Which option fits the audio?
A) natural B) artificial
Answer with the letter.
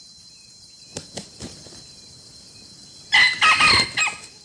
A